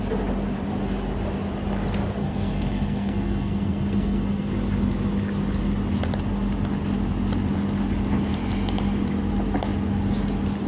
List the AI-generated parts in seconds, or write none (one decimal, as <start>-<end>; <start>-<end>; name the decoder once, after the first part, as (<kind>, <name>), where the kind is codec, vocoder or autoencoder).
2.2-4.5 (codec, SNAC)